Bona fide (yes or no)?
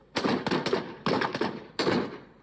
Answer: yes